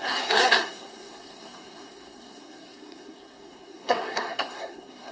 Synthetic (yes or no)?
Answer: yes